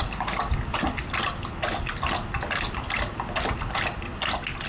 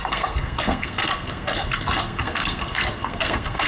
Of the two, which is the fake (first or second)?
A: second